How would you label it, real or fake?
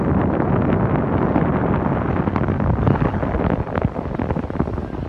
real